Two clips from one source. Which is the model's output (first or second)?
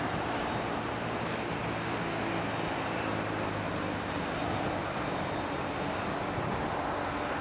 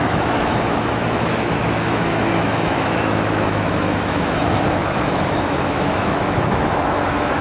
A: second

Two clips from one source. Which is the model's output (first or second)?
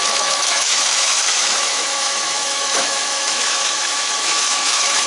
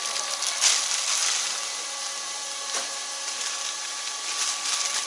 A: first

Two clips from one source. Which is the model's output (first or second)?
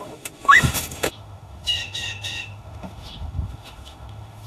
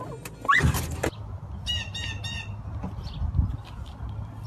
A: first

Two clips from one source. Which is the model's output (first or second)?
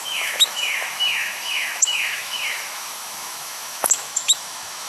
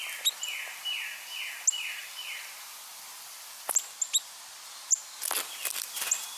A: first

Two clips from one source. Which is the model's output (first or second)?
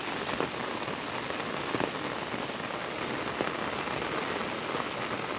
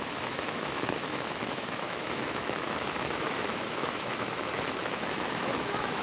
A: second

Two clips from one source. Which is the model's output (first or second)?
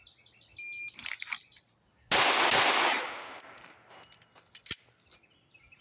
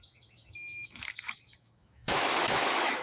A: second